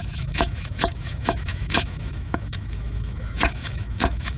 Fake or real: fake